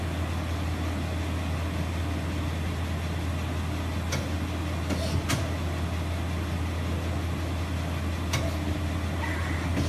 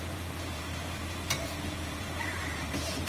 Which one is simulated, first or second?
second